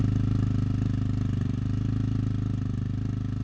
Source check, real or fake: real